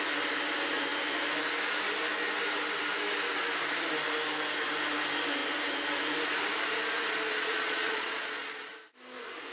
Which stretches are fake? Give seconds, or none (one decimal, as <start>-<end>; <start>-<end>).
7.3-8.7